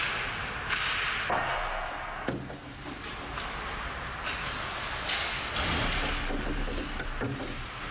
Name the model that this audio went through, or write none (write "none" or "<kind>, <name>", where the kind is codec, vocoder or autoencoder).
none